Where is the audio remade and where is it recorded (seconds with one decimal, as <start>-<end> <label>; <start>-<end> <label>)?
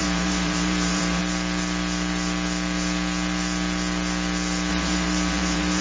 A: 0.0-1.2 remade; 1.2-4.7 recorded; 4.7-5.8 remade